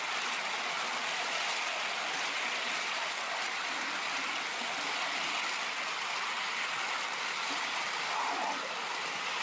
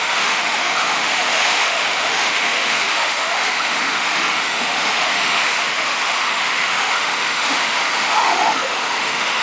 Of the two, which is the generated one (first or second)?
second